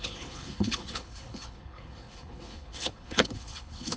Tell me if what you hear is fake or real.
fake